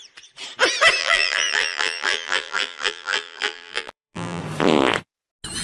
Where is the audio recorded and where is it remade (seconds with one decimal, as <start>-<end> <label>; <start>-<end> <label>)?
0.0-1.0 recorded; 1.0-4.4 remade; 4.4-5.6 recorded